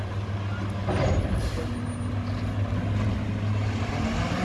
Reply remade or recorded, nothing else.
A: recorded